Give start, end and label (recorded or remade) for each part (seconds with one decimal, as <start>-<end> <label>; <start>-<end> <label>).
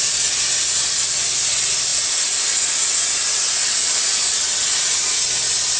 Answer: 0.0-5.8 recorded